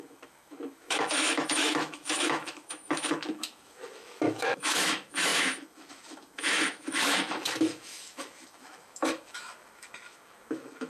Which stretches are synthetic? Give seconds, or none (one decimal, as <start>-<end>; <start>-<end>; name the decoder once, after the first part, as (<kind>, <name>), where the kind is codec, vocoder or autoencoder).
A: 0.0-10.9 (autoencoder, DAC-VAE)